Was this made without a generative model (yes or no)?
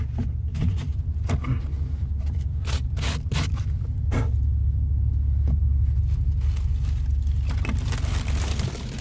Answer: yes